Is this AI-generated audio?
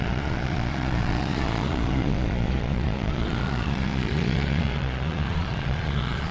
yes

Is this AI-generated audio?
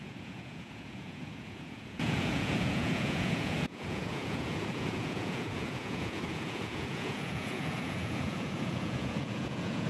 yes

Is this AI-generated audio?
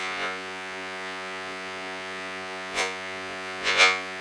yes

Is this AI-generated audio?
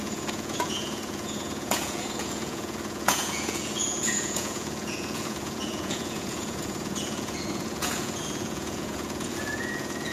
yes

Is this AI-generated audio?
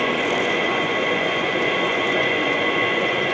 yes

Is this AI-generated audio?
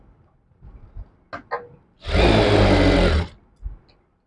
no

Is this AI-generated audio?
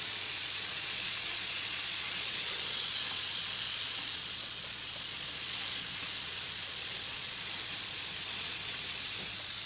yes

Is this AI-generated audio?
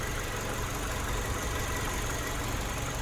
no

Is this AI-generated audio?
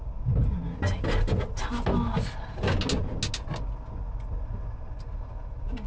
no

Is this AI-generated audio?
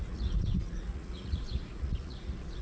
yes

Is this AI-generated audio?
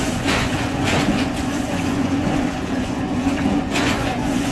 yes